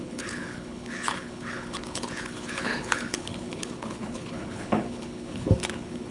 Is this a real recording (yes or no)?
no